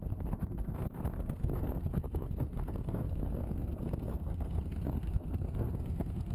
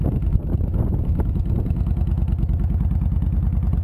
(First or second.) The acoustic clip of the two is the second